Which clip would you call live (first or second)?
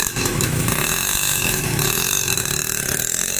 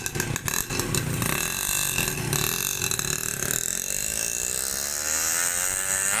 second